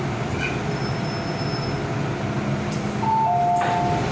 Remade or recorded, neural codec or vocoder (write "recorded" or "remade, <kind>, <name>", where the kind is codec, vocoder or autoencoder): recorded